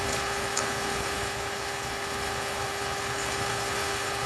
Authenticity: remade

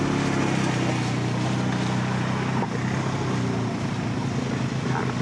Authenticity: recorded